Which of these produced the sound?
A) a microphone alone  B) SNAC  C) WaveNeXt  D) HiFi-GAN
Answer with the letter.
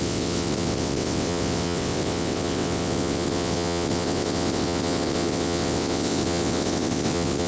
C